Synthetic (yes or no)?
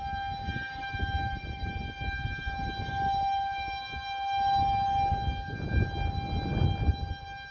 no